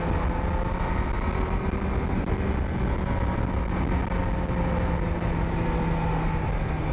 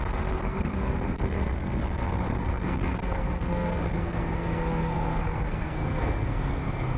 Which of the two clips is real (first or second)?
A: first